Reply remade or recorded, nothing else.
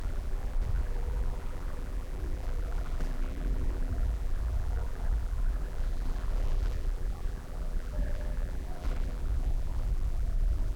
remade